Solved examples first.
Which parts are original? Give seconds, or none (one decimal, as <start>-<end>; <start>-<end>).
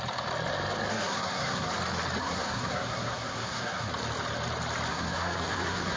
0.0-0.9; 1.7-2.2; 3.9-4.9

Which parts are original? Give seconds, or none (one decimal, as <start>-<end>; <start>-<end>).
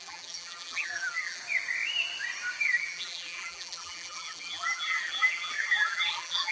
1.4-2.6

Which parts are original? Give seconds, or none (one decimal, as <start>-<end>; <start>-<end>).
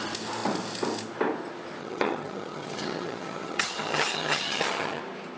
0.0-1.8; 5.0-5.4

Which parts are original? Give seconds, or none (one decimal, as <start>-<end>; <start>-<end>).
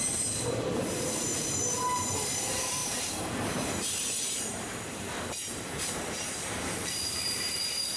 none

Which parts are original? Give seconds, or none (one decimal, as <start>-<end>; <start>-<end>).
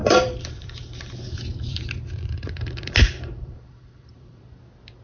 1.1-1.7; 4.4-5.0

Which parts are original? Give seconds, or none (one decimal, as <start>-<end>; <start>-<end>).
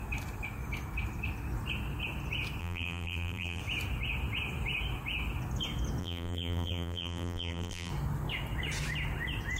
0.0-2.6; 3.6-6.0; 7.9-9.6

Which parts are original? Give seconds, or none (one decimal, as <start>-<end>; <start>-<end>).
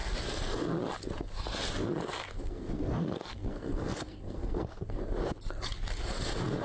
0.0-2.2; 5.0-6.6